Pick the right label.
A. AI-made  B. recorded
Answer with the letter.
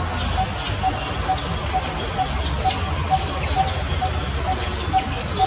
B